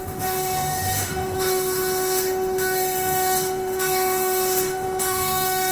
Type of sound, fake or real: fake